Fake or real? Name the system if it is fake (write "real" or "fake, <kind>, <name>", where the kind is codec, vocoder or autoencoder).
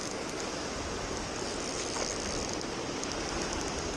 real